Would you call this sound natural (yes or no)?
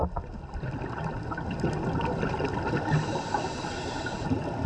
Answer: yes